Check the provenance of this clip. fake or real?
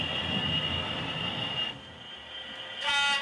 real